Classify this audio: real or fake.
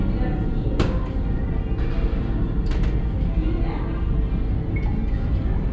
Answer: real